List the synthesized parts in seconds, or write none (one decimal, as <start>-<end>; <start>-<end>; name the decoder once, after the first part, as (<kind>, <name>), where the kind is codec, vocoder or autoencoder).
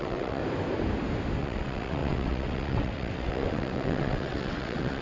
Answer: 0.0-0.4 (vocoder, WaveNeXt); 1.4-5.0